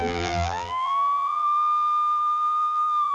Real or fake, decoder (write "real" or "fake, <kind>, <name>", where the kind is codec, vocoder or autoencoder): fake, vocoder, BigVGAN v2